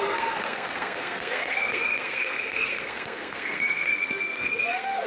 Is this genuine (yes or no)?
no